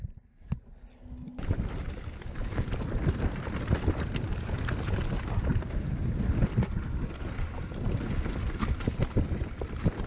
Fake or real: real